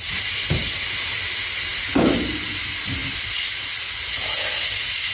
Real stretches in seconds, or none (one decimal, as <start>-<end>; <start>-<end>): 0.0-5.1